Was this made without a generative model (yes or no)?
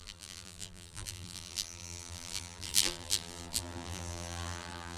no